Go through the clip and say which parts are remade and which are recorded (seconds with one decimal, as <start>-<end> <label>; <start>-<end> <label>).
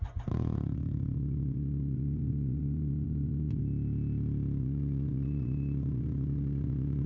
0.0-3.6 remade; 3.6-4.6 recorded; 4.6-7.1 remade